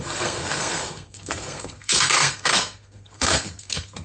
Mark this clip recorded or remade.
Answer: remade